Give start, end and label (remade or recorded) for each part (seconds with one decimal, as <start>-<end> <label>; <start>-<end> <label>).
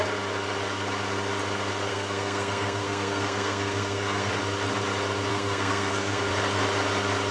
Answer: 0.0-1.9 recorded; 1.9-4.3 remade; 4.3-5.3 recorded; 5.3-6.2 remade; 6.2-7.3 recorded